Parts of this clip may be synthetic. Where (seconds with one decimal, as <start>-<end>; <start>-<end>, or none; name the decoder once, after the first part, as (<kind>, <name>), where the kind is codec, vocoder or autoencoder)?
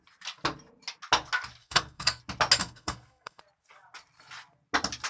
1.6-2.2 (codec, SNAC); 2.6-3.4